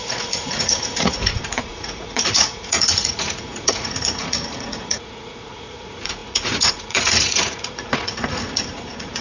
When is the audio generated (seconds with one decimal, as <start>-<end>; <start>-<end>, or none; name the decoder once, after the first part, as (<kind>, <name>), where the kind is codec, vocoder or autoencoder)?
0.0-9.2 (vocoder, Vocos)